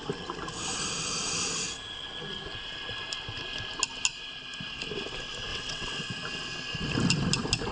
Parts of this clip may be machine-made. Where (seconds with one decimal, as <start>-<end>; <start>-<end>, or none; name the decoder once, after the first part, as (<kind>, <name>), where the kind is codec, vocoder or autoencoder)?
5.5-6.0 (vocoder, WaveNeXt)